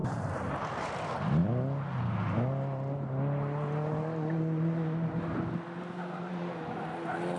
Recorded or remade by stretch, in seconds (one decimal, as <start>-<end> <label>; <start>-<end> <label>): 0.0-0.9 remade; 0.9-7.4 recorded

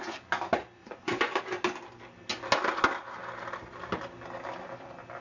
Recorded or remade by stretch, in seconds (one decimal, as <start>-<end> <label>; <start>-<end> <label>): 0.0-0.8 recorded; 0.8-1.4 remade; 1.4-5.2 recorded

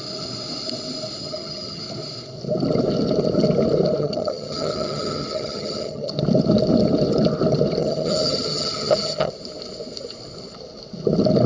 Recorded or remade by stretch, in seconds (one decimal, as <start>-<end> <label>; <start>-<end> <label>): 0.0-1.2 recorded; 1.2-1.8 remade; 1.8-4.0 recorded; 4.0-6.1 remade; 6.1-7.8 recorded; 7.8-9.3 remade; 9.3-11.5 recorded

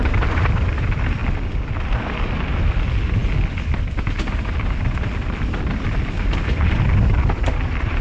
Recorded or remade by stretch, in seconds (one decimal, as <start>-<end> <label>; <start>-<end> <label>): 0.0-8.0 recorded

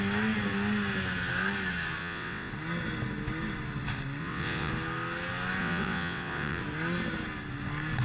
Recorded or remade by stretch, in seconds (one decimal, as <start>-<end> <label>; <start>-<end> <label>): 0.0-2.0 recorded; 2.0-2.5 remade; 2.5-4.2 recorded; 4.2-4.7 remade; 4.7-5.6 recorded; 5.6-6.6 remade; 6.6-8.0 recorded

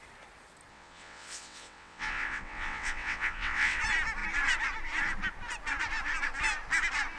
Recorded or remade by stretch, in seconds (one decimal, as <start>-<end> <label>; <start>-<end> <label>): 0.0-0.7 recorded; 0.7-3.8 remade; 3.8-7.2 recorded